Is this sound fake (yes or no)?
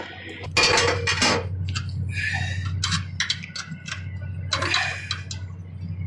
no